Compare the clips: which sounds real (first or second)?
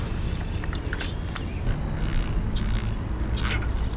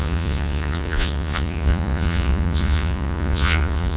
first